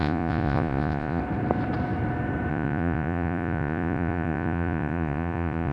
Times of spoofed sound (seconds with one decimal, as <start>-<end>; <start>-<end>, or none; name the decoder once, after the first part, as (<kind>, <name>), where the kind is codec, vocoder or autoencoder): 0.0-1.2 (vocoder, Vocos); 2.5-5.7